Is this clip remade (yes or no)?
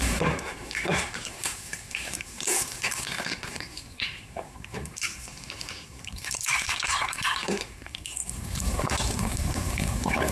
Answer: yes